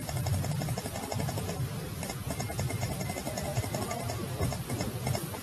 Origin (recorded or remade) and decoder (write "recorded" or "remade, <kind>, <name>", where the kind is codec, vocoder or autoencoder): recorded